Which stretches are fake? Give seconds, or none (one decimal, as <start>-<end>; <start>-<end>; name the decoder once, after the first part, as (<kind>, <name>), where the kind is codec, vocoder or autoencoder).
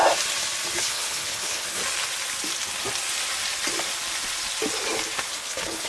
0.8-1.8 (codec, HILCodec); 5.3-5.9